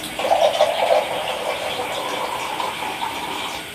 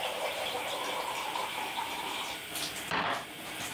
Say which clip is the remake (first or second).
second